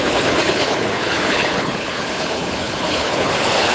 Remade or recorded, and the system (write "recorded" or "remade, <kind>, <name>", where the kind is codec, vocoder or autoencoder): remade, codec, HILCodec